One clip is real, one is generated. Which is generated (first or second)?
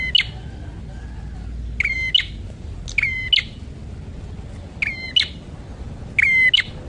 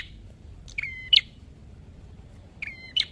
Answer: second